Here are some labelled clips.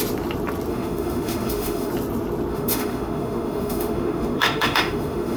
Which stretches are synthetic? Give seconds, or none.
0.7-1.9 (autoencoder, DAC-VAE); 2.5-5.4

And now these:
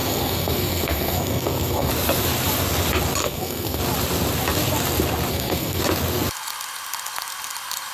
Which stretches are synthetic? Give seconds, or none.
0.0-1.9 (codec, SNAC); 3.2-3.8; 5.3-5.8